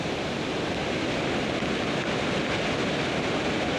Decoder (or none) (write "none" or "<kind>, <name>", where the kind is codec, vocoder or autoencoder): none